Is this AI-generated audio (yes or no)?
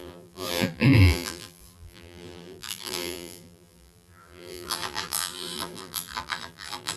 yes